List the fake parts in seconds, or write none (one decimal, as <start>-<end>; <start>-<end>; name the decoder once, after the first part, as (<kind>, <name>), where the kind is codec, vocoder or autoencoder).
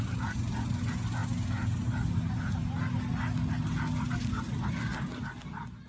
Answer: none